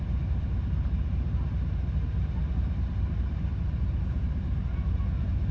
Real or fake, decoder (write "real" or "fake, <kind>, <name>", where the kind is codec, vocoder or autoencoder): real